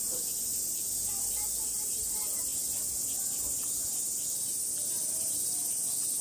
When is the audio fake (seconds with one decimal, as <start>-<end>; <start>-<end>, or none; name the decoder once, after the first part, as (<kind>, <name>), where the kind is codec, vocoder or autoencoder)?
0.0-0.5 (vocoder, BigVGAN v2); 1.3-2.5; 4.9-6.2